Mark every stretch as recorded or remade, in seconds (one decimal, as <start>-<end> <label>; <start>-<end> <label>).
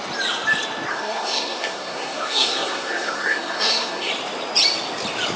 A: 0.0-0.9 recorded; 0.9-4.1 remade; 4.1-5.4 recorded